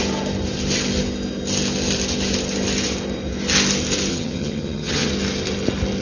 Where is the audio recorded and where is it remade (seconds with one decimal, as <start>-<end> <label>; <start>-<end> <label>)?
0.0-4.1 recorded; 4.1-5.1 remade; 5.1-6.0 recorded